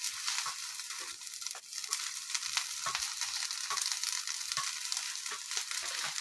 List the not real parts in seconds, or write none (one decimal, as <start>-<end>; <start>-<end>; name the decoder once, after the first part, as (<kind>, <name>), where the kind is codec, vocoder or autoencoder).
none